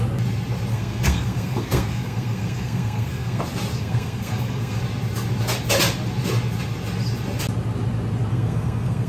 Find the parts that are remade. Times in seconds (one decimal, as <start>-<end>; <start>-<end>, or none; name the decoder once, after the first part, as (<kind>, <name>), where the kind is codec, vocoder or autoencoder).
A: 0.7-3.4 (codec, SNAC); 3.8-4.8; 8.3-9.1